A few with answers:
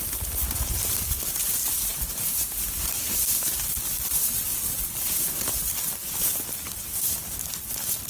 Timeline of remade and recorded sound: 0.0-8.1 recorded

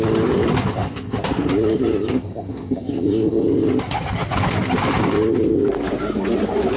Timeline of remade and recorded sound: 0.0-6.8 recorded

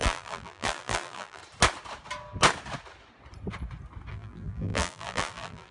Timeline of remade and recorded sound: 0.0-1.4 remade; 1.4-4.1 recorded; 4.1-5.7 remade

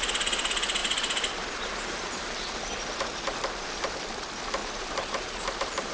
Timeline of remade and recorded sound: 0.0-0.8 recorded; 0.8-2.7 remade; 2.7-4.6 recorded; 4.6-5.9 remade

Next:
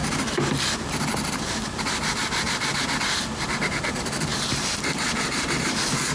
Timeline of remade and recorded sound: 0.0-0.6 remade; 0.6-6.1 recorded